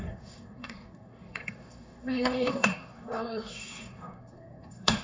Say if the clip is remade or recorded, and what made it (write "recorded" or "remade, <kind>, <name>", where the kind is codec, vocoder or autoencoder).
remade, codec, SNAC